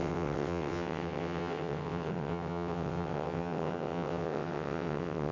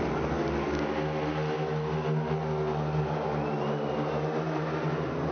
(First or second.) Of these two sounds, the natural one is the second